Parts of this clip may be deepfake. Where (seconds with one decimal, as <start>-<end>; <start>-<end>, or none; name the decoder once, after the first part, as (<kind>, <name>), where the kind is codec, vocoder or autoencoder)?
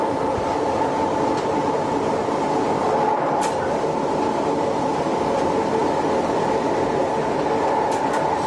none